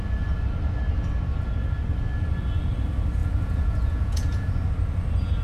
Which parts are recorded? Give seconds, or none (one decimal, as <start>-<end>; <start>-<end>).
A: 0.0-3.2; 4.5-5.4